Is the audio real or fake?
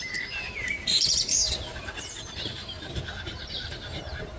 fake